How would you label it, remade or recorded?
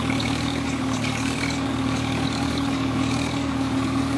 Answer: remade